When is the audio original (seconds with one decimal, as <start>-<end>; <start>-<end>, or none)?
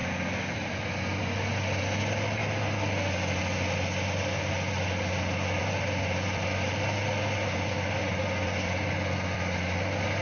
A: 0.0-10.2